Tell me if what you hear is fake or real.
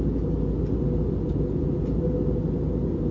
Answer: real